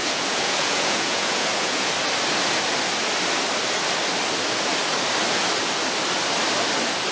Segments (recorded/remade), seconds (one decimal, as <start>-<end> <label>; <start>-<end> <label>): 0.0-1.9 remade; 1.9-7.1 recorded